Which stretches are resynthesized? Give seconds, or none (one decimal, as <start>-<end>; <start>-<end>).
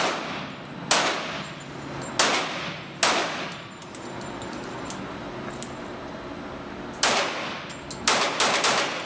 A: none